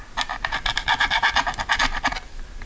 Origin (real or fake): real